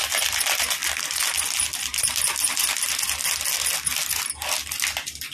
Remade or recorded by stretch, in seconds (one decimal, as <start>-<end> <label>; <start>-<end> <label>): 0.0-0.8 recorded; 0.8-1.3 remade; 1.3-1.9 recorded; 1.9-3.4 remade; 3.4-5.3 recorded